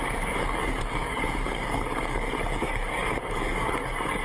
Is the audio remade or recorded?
remade